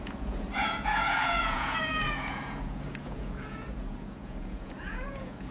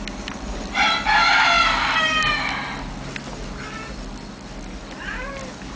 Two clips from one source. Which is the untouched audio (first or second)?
second